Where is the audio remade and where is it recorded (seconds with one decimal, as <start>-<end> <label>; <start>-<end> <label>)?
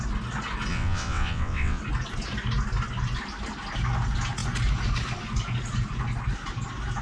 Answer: 0.0-0.7 recorded; 0.7-1.8 remade; 1.8-7.0 recorded